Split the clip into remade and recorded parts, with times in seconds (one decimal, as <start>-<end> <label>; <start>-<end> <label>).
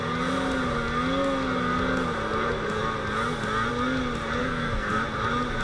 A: 0.0-4.4 recorded; 4.4-5.0 remade; 5.0-5.6 recorded